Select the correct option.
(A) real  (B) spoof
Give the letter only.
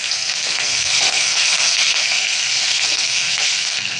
B